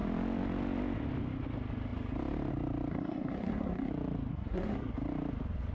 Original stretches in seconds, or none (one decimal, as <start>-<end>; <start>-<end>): 0.0-2.9; 3.9-4.3; 4.9-5.7